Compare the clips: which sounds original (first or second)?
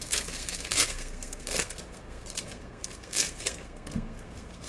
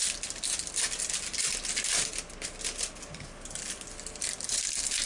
second